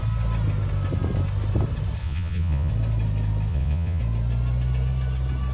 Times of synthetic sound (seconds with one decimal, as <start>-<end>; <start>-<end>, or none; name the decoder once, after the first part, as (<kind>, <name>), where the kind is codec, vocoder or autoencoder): 2.0-2.7 (vocoder, Vocos); 3.5-4.0